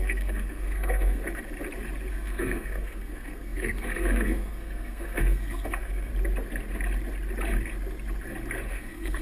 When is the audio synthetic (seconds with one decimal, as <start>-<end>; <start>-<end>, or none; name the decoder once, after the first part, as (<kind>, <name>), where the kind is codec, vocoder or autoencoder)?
0.0-1.2 (codec, SNAC); 2.1-6.1; 8.7-9.2